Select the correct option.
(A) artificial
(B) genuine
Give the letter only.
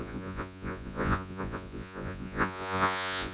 A